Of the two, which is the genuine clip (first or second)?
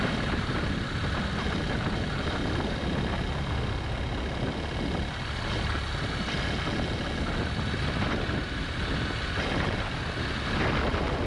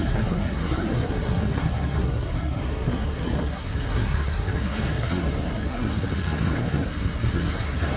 first